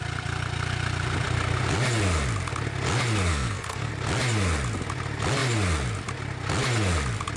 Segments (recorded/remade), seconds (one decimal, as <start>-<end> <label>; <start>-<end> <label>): 0.0-3.3 recorded; 3.3-3.9 remade; 3.9-7.4 recorded